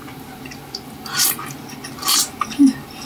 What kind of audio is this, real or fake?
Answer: real